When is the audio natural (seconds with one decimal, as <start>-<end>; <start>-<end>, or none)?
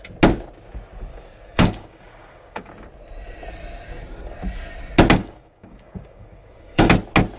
0.0-1.1; 2.7-5.2; 6.9-7.4